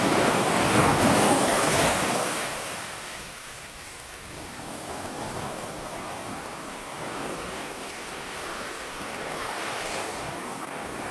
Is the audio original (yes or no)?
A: no